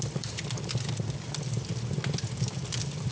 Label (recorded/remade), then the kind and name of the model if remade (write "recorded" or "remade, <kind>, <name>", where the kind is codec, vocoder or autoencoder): remade, vocoder, BigVGAN v2